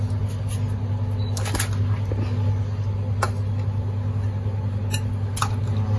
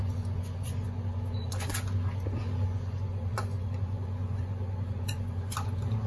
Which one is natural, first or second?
first